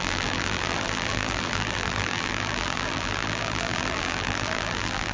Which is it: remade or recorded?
remade